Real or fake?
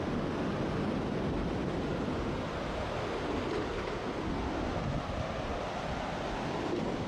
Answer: real